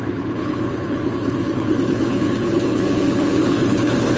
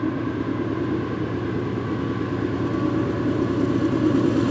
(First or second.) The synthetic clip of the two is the first